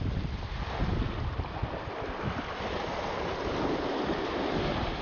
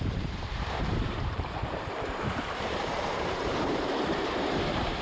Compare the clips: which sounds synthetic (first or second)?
second